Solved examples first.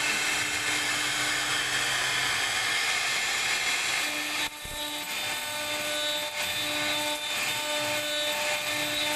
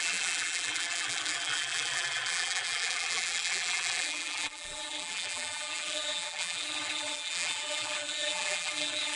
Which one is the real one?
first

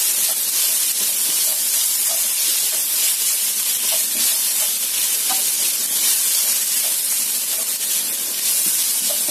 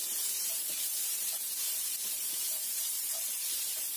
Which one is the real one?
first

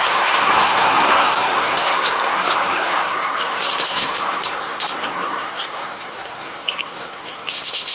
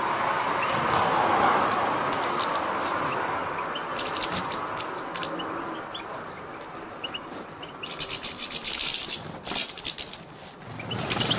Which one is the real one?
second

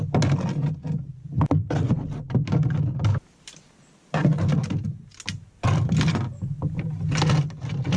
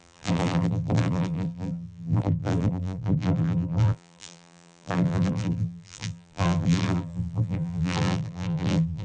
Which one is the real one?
first